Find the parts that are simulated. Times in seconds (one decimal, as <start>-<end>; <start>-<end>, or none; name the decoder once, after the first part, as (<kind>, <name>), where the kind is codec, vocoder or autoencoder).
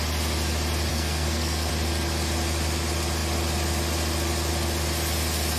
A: 0.9-1.7 (codec, SNAC)